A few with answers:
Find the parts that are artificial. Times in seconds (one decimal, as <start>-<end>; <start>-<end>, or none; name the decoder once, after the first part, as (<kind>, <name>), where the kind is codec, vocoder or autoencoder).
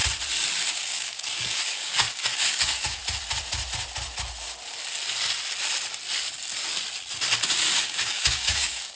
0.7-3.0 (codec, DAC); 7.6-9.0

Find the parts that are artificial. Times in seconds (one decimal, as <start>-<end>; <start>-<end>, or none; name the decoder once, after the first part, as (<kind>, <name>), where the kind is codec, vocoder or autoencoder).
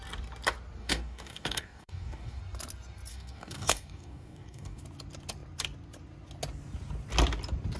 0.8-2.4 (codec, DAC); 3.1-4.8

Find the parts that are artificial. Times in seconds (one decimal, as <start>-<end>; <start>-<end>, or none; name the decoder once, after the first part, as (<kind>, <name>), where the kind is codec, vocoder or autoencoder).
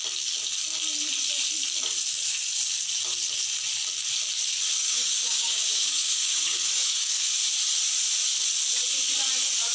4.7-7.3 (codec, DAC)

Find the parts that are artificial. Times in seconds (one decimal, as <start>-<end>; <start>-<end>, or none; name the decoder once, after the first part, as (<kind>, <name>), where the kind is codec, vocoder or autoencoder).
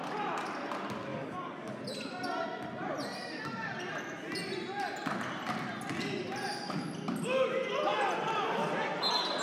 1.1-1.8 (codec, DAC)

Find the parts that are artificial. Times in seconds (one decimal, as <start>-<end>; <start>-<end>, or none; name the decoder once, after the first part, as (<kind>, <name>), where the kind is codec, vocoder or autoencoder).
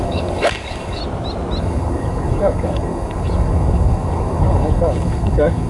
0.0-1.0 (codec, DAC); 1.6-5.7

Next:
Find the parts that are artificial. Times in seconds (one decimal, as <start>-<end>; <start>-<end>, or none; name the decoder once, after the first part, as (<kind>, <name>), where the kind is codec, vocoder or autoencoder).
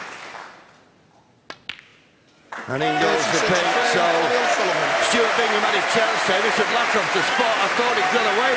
none